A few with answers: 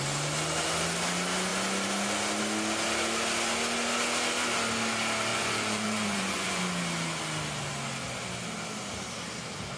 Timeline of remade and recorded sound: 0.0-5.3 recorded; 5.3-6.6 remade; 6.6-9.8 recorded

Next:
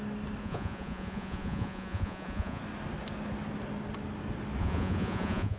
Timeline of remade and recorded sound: 0.0-0.4 recorded; 0.4-2.6 remade; 2.6-4.6 recorded; 4.6-5.6 remade

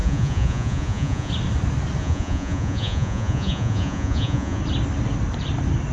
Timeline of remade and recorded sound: 0.0-1.3 remade; 1.3-2.0 recorded; 2.0-4.6 remade; 4.6-5.9 recorded

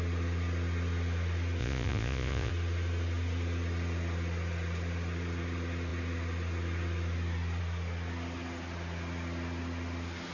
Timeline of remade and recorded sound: 0.0-1.6 recorded; 1.6-2.5 remade; 2.5-10.3 recorded